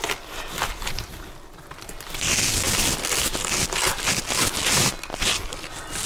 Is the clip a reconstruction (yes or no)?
no